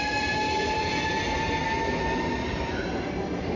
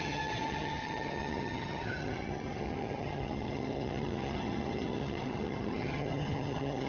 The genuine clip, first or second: first